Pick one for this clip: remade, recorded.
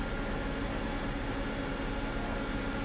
recorded